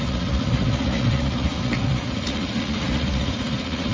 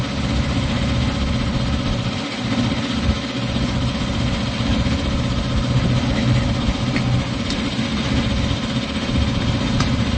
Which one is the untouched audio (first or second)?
second